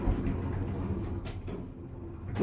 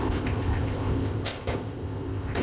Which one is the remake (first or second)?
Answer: second